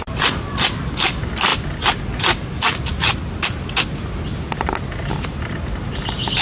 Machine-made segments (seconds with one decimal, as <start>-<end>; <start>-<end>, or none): none